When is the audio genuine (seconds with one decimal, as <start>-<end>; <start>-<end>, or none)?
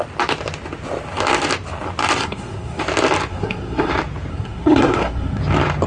0.0-2.2; 2.8-3.3; 3.9-4.3; 5.4-5.9